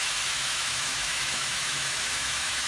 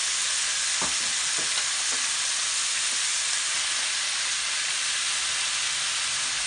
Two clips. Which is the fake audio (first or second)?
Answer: first